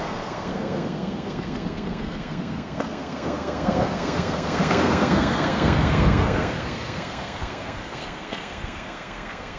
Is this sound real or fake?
fake